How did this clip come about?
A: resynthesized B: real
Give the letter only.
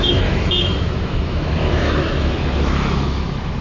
A